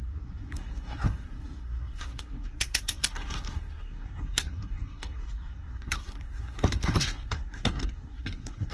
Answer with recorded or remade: remade